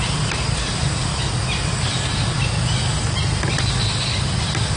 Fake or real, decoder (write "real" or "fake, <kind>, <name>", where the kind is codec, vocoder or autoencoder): real